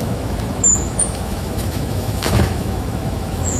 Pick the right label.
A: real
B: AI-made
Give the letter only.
B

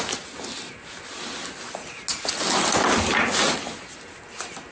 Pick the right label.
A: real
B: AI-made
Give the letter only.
A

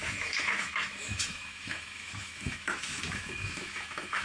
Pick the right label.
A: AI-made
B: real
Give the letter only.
A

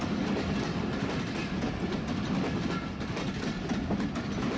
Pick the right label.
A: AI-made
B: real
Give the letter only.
B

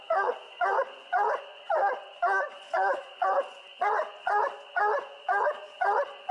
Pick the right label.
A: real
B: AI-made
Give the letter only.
B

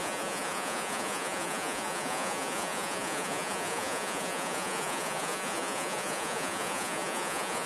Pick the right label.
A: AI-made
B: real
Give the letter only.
A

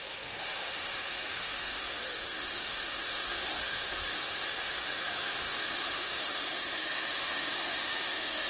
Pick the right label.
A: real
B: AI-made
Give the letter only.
B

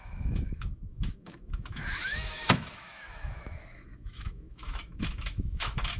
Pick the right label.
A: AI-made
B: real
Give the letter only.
A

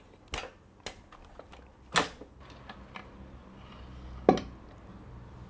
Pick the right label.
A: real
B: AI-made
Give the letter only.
A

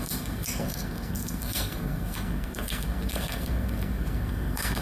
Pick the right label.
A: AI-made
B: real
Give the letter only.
A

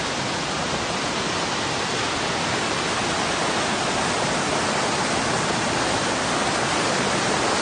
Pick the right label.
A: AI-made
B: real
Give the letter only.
B